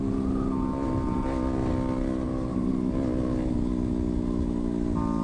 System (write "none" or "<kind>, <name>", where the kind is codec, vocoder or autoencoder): none